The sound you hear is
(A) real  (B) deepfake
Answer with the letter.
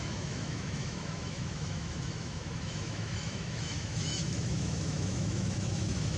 B